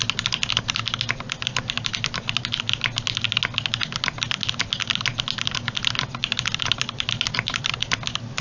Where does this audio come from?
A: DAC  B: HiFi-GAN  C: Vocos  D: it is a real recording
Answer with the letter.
D